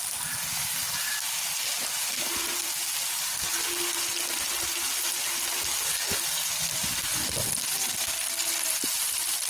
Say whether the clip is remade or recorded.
recorded